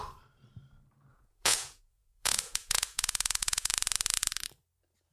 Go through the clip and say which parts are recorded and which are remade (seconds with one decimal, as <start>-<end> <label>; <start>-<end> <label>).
0.0-1.1 recorded; 1.1-3.7 remade; 3.7-5.1 recorded